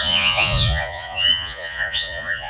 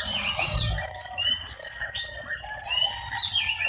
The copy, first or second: first